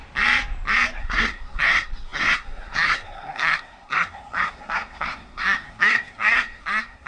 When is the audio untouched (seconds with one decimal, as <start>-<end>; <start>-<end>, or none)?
0.0-1.0